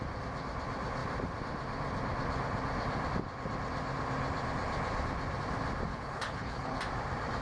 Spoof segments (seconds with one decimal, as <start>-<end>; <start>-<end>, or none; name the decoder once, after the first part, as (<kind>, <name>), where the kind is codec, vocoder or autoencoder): 5.9-6.8 (codec, HILCodec)